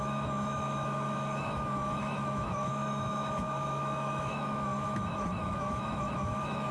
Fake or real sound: fake